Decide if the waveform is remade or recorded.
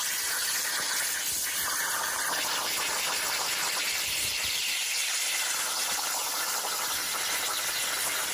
recorded